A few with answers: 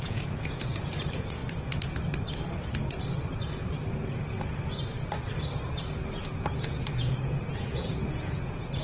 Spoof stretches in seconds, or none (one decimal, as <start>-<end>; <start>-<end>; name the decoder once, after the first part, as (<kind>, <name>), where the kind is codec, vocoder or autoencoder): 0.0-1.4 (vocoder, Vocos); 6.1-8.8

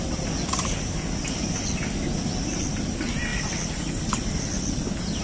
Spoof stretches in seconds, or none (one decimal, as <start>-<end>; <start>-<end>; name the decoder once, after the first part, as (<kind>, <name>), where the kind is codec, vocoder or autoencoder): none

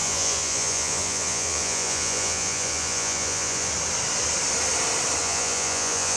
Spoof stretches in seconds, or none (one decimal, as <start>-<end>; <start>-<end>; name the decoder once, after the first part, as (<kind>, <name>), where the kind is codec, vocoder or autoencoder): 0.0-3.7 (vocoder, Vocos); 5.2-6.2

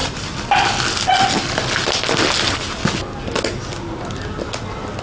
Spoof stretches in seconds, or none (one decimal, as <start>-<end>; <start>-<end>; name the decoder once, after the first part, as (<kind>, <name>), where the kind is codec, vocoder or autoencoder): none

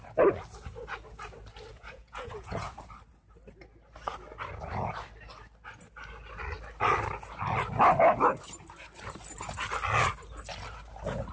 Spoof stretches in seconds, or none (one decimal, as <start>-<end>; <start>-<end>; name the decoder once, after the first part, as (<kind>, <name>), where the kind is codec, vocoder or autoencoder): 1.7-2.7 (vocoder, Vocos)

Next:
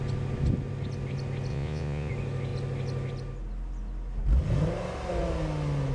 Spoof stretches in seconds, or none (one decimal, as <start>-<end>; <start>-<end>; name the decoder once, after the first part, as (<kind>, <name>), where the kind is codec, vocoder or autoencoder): 1.5-2.1 (vocoder, Vocos)

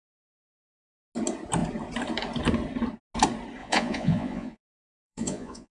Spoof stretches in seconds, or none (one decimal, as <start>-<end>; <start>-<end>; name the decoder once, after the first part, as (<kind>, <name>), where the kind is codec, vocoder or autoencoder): 3.6-5.7 (vocoder, Vocos)

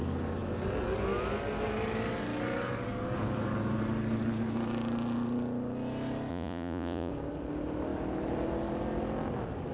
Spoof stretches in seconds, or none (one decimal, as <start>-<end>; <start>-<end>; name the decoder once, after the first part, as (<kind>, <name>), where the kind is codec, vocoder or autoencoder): 6.3-7.1 (vocoder, Vocos)